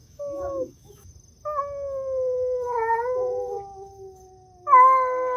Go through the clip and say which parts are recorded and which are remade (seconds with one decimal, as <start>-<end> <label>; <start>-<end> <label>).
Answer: 0.0-1.1 remade; 1.1-5.4 recorded